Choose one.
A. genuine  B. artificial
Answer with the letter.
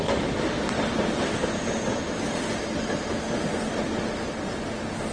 A